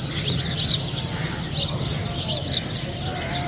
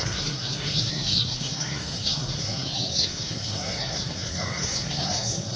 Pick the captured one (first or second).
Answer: first